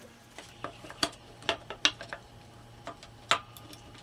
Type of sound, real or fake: real